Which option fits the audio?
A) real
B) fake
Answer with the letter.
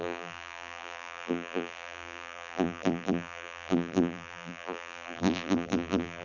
B